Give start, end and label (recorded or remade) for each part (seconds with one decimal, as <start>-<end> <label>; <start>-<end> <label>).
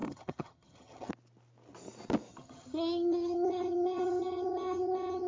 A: 0.0-1.1 remade; 1.1-2.3 recorded; 2.3-5.3 remade